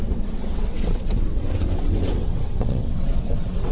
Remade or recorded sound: remade